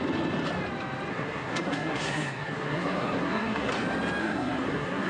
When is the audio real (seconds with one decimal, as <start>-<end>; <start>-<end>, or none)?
0.0-1.1; 3.7-4.2